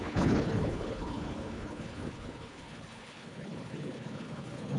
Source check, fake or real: fake